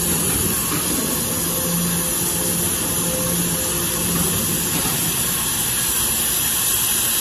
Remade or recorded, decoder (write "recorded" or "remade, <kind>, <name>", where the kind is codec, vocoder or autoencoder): recorded